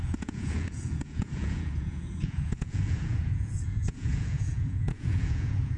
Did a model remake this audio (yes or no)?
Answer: yes